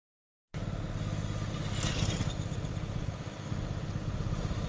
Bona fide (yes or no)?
yes